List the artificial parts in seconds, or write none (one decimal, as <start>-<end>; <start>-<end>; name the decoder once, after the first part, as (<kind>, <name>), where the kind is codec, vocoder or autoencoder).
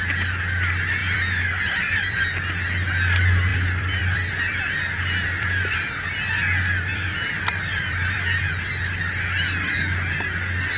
1.0-1.6 (vocoder, BigVGAN v2); 3.5-5.9; 6.9-9.0